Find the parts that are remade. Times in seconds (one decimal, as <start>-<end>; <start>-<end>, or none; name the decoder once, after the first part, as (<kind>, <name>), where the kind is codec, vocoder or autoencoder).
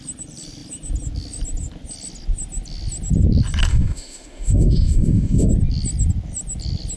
3.7-5.5 (autoencoder, DAC-VAE)